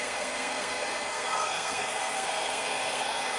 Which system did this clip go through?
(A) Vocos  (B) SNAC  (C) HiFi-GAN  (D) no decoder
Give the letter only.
B